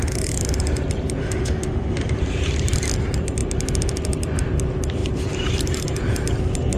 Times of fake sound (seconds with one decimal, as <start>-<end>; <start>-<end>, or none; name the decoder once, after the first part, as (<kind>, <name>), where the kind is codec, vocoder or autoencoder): 1.2-2.2 (autoencoder, DAC-VAE)